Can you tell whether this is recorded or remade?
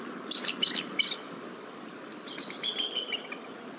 recorded